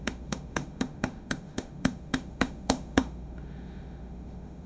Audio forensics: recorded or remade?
remade